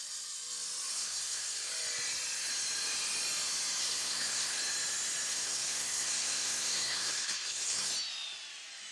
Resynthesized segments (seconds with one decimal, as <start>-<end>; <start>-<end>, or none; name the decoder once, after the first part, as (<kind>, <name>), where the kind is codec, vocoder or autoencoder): 0.9-1.7 (codec, SNAC); 3.8-4.6; 5.3-7.9